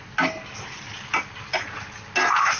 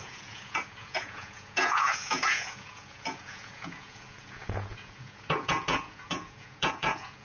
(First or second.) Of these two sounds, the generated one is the second